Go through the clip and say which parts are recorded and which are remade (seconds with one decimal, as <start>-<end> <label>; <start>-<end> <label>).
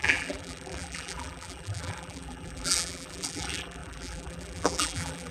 0.0-5.3 remade